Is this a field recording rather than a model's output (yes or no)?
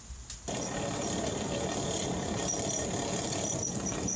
no